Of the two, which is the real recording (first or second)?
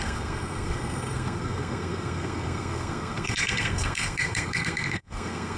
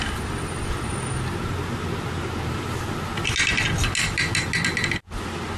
second